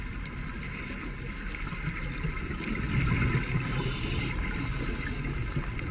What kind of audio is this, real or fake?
real